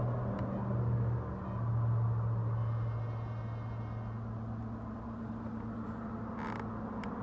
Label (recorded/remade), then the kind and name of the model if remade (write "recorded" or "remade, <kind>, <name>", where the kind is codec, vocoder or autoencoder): recorded